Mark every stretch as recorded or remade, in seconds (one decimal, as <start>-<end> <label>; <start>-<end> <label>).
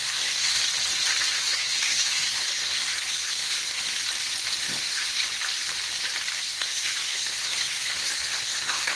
0.0-0.6 remade; 0.6-1.3 recorded; 1.3-4.0 remade; 4.0-4.6 recorded; 4.6-5.2 remade; 5.2-6.4 recorded; 6.4-9.0 remade